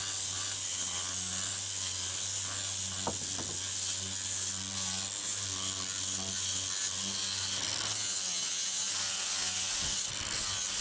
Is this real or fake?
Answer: real